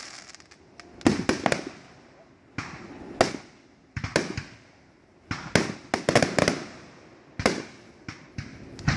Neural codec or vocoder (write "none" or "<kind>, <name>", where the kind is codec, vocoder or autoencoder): none